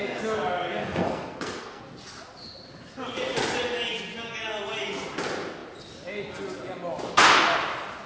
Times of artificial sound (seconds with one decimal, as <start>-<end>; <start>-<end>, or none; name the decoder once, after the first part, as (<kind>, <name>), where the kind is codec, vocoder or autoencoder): 0.8-1.8 (codec, SNAC)